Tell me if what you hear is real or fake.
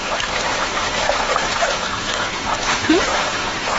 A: fake